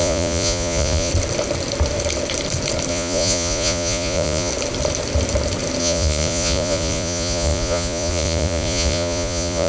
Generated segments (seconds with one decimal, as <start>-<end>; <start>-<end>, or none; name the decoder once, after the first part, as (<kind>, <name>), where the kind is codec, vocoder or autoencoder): 0.0-1.1 (vocoder, Vocos); 2.9-4.5; 5.8-9.7